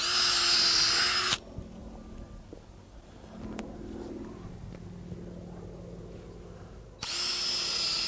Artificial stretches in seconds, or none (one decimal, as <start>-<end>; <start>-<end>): none